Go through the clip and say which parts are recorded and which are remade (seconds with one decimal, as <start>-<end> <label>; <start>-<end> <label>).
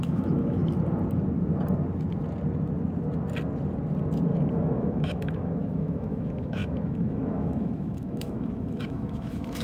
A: 0.0-0.6 remade; 0.6-4.5 recorded; 4.5-9.6 remade